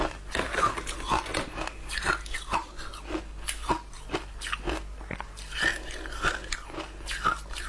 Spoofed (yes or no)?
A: no